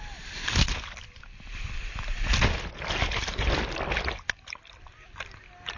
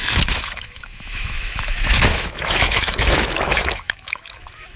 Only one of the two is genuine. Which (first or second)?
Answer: first